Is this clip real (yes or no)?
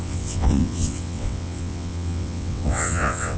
no